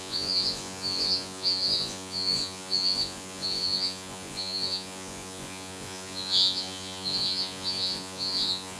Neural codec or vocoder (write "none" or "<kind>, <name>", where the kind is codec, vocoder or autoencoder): vocoder, Vocos